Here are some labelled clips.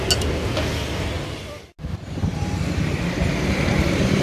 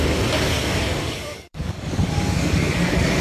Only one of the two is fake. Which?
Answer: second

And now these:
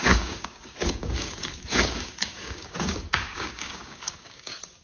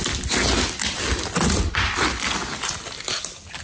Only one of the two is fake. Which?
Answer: first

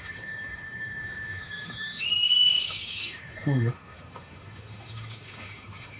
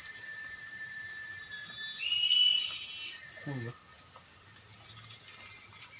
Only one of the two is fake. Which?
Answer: first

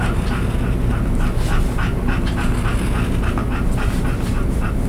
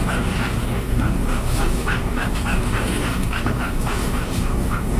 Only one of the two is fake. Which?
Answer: second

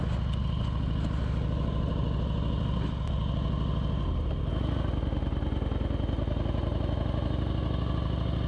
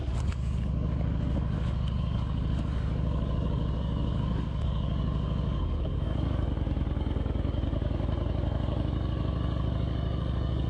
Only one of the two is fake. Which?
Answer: second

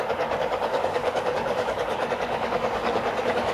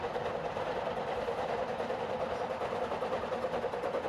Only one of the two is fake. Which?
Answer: first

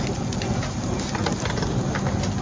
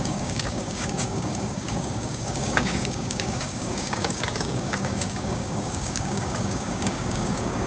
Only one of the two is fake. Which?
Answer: second